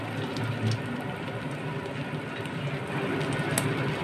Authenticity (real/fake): real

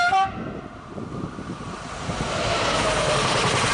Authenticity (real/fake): fake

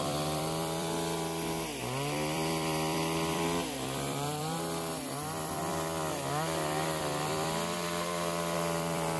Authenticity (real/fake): fake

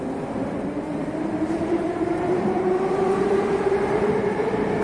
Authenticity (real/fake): fake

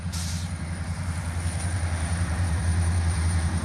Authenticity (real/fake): fake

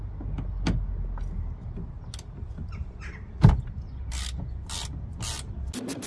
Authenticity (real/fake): real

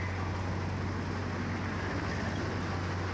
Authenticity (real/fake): real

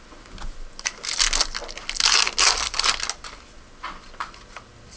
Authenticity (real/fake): real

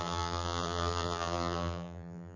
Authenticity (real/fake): fake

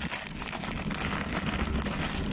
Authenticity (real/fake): real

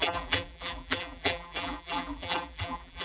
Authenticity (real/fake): fake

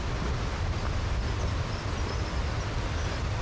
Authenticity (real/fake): real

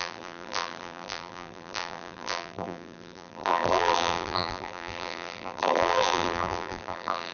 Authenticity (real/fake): fake